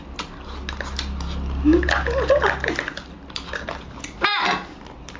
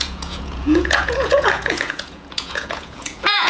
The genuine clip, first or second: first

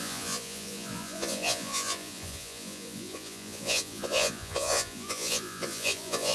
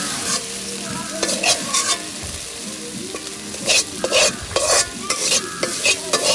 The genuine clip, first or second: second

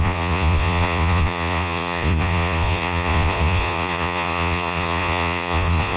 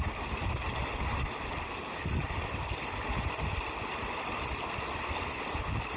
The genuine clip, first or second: second